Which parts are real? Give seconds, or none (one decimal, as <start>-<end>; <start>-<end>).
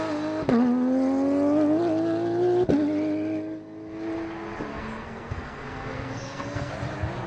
0.0-4.7; 6.7-7.3